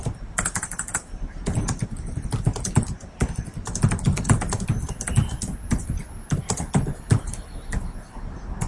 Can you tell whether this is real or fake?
real